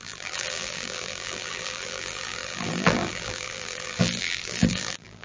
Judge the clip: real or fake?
fake